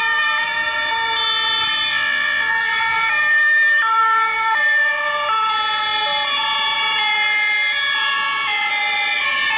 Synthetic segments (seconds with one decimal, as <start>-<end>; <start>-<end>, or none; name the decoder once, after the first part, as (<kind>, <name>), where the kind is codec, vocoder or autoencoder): 1.9-2.5 (vocoder, WaveNeXt)